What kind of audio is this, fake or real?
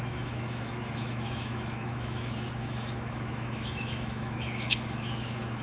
fake